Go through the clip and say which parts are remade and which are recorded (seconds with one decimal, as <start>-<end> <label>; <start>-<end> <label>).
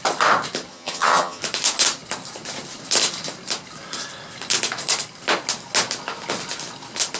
0.0-0.7 recorded; 0.7-1.4 remade; 1.4-7.2 recorded